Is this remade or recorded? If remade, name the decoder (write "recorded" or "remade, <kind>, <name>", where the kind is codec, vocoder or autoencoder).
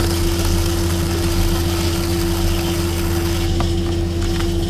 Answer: recorded